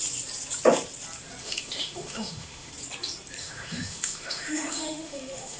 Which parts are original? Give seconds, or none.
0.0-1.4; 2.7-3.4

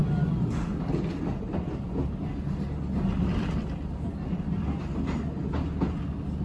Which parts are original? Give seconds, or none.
0.0-6.4

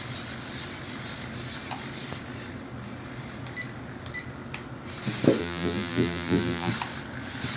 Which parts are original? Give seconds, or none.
0.0-5.4; 6.7-7.6